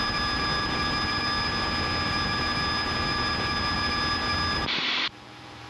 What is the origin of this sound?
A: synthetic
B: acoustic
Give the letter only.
A